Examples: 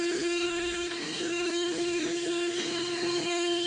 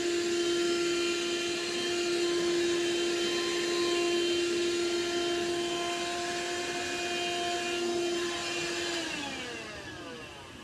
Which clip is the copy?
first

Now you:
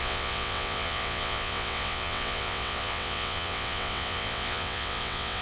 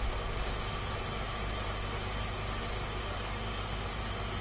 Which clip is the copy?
first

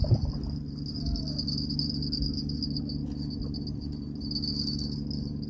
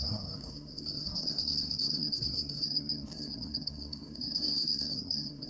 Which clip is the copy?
second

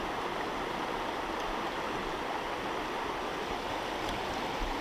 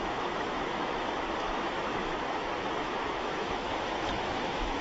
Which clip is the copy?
second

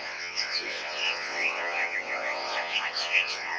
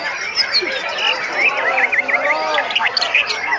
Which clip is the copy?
first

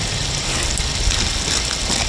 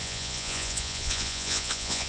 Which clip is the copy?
second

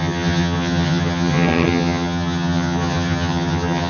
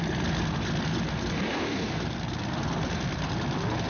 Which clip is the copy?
first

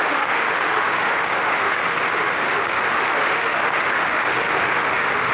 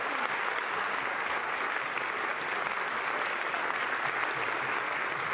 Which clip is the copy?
first